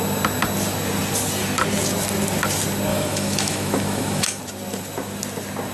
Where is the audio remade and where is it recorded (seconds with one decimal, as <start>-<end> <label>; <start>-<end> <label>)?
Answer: 0.0-2.9 recorded; 2.9-4.4 remade; 4.4-5.7 recorded